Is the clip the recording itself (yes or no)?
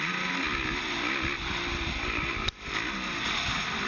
yes